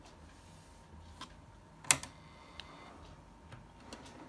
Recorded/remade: recorded